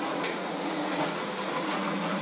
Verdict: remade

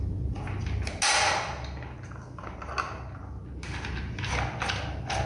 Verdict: recorded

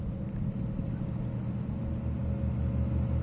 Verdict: recorded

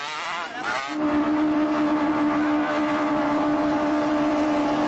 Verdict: recorded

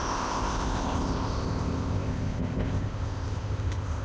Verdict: remade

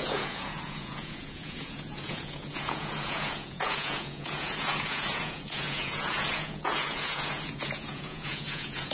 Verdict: remade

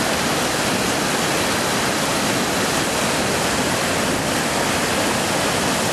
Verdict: recorded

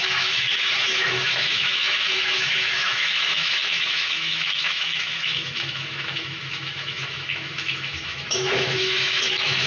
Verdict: remade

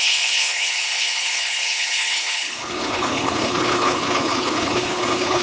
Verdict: remade